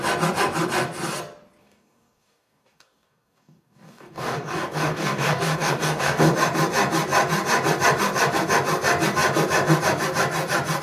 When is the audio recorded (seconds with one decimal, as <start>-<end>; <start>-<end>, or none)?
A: 0.0-1.6; 6.3-10.8